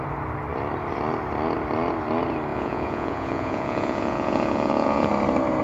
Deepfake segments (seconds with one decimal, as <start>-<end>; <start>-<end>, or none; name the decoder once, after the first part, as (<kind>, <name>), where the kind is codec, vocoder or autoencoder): 2.5-5.1 (vocoder, Vocos)